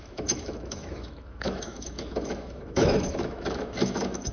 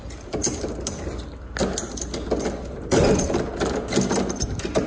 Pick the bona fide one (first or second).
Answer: second